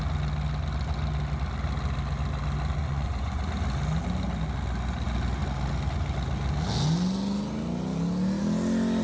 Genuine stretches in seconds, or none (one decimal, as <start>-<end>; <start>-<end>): 0.0-2.8; 3.4-9.0

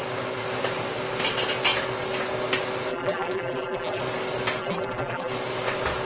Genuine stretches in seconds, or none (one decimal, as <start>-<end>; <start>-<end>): 0.0-2.9; 4.0-4.6; 5.3-6.1